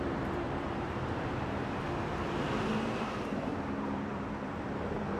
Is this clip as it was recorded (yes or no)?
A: no